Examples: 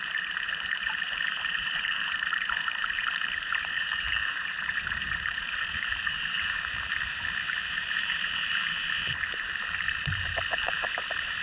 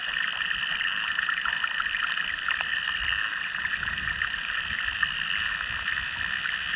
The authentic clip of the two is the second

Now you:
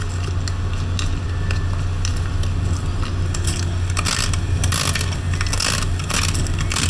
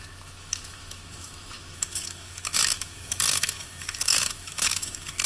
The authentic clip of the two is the first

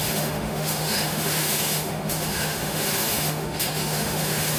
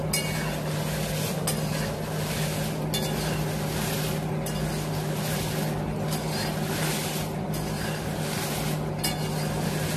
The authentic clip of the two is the second